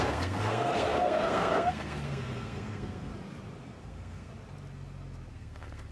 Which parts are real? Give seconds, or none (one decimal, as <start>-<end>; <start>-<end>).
3.1-3.8; 4.3-5.3